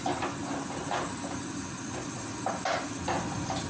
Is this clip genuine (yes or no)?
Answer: yes